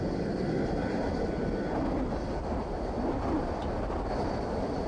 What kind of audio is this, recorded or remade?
recorded